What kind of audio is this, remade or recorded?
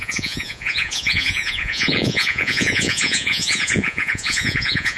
remade